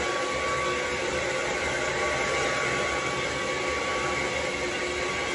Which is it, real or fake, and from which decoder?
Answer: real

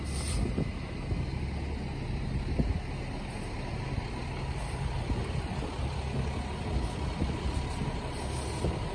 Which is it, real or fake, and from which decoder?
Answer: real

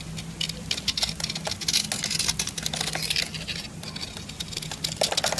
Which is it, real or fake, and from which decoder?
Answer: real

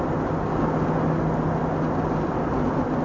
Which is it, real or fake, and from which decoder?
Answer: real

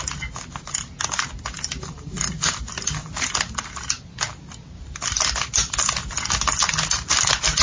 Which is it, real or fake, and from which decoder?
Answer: real